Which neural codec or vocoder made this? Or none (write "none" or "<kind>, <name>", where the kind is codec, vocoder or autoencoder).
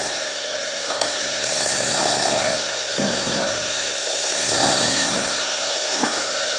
codec, SNAC